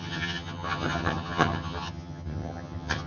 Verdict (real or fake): fake